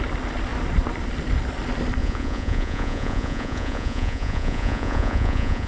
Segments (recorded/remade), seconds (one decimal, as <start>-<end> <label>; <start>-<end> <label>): 0.0-2.0 recorded; 2.0-5.7 remade